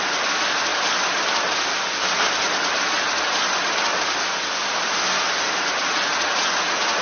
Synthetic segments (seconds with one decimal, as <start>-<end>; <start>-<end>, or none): 5.8-7.0